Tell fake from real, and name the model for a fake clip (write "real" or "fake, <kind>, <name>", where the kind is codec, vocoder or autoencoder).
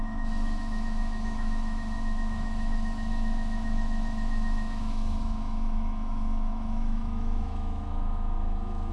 fake, autoencoder, DAC-VAE